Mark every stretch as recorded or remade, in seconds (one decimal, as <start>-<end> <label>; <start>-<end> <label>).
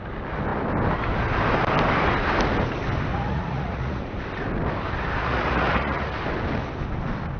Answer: 0.0-3.1 recorded; 3.1-4.0 remade; 4.0-5.2 recorded; 5.2-6.1 remade; 6.1-7.4 recorded